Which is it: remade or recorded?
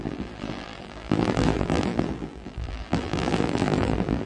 remade